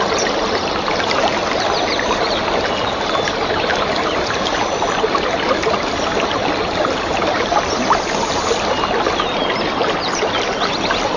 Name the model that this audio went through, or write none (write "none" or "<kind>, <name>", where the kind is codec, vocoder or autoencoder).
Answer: none